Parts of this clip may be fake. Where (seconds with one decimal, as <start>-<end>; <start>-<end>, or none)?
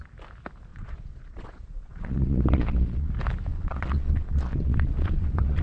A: 0.7-3.1; 3.5-5.6